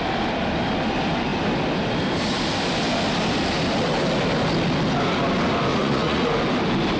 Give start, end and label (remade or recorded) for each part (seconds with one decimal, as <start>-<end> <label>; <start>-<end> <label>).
0.0-5.7 recorded; 5.7-6.3 remade; 6.3-7.0 recorded